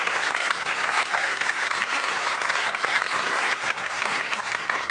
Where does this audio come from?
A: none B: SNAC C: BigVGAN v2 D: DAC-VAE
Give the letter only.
B